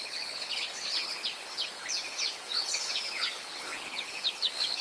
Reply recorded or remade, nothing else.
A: remade